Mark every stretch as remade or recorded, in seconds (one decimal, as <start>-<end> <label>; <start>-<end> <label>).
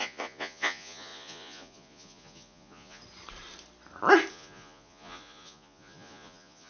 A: 0.0-3.0 remade; 3.0-4.3 recorded; 4.3-6.7 remade